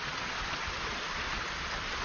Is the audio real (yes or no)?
no